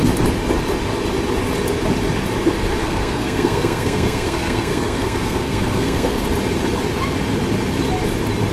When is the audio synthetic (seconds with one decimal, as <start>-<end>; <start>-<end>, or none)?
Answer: 2.8-6.2